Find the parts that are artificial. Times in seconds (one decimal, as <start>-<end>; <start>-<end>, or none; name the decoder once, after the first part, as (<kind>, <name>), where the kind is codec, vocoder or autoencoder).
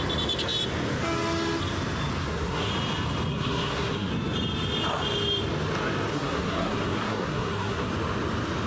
2.2-2.7 (codec, SNAC); 3.3-4.1; 6.1-7.9